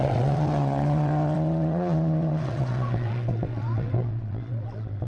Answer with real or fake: fake